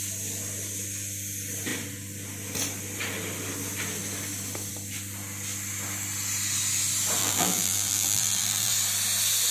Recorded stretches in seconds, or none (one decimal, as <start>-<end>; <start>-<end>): 0.0-7.2; 8.7-9.5